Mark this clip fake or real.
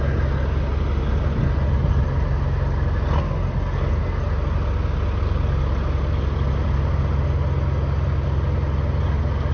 real